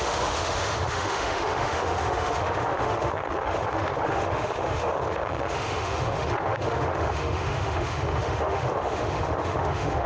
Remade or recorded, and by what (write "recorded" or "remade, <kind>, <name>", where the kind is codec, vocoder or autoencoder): remade, autoencoder, DAC-VAE